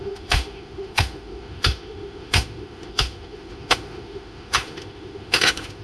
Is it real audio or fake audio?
fake